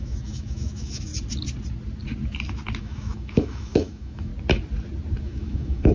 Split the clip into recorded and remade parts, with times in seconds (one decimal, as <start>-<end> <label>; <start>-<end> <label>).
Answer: 0.0-1.1 remade; 1.1-2.8 recorded; 2.8-4.3 remade; 4.3-5.2 recorded; 5.2-5.9 remade